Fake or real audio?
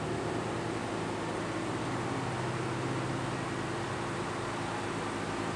real